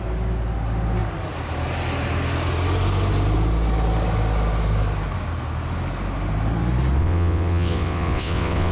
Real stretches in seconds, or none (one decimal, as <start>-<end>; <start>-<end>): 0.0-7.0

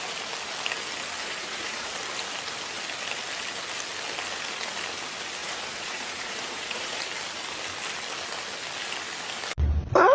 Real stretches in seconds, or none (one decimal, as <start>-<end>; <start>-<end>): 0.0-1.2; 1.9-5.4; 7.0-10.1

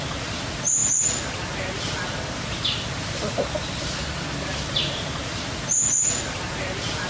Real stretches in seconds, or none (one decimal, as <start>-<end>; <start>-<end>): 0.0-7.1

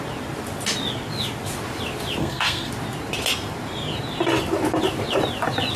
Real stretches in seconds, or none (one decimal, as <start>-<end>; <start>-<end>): 0.0-2.2; 2.7-5.8

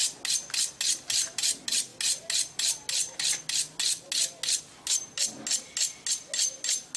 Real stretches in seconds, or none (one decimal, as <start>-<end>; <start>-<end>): 0.0-7.0